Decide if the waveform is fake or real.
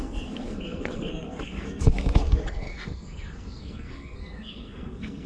fake